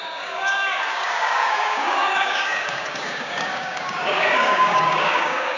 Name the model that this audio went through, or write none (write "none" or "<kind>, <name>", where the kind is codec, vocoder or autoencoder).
codec, DAC